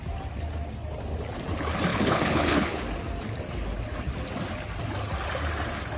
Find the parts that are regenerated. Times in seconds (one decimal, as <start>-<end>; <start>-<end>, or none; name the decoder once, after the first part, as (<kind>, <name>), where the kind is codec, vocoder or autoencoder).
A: 1.9-2.8 (codec, HILCodec)